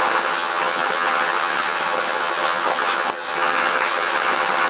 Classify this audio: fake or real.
fake